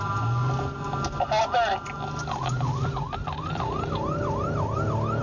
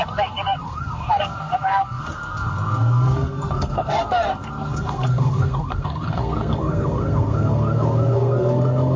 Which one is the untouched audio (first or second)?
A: first